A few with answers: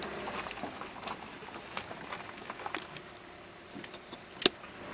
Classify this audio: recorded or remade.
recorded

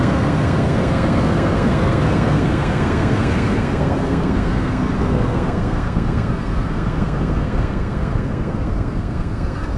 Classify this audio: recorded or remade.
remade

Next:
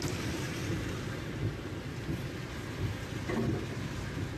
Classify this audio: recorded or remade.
recorded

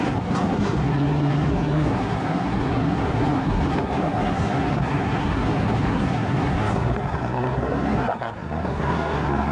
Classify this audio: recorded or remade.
remade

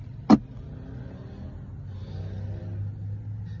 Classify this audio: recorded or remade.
recorded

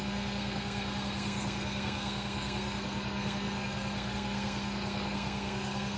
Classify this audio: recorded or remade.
remade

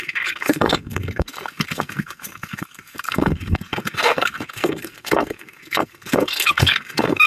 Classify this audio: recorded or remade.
remade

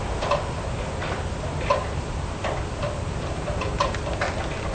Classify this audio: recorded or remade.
recorded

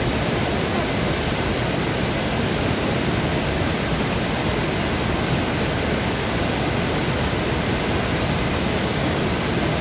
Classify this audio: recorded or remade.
recorded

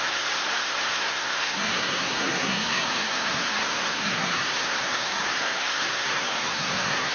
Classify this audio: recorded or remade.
remade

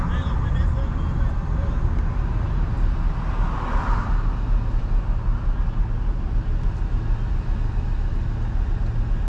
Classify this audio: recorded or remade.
recorded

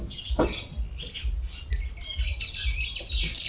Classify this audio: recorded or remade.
recorded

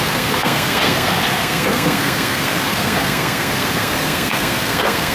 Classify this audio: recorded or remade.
remade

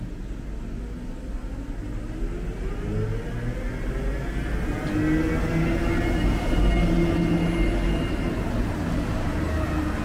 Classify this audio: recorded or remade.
recorded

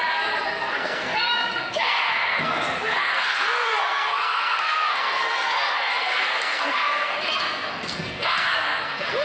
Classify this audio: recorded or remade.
remade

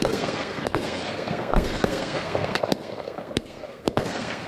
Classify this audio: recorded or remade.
remade